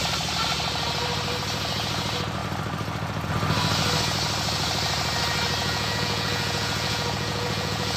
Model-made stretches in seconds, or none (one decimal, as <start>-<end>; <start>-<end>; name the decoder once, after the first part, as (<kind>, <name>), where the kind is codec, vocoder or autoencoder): 5.6-8.0 (vocoder, Vocos)